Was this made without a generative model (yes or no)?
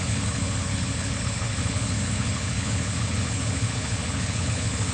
no